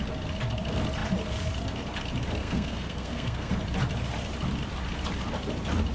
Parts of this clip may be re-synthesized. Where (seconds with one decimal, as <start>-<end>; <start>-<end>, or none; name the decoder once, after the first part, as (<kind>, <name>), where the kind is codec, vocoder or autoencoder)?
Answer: 2.4-3.5 (codec, SNAC)